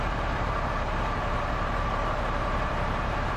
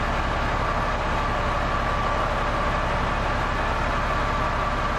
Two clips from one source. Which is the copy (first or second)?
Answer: first